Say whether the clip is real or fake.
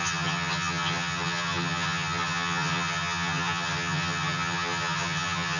fake